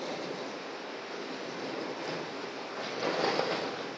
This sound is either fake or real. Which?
real